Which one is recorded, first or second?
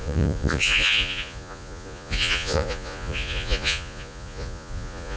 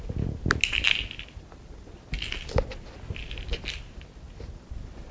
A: second